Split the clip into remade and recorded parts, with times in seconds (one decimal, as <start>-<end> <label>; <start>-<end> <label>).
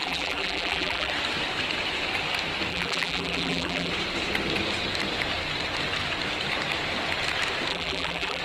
0.0-1.1 remade; 1.1-2.7 recorded; 2.7-3.9 remade; 3.9-7.7 recorded; 7.7-8.4 remade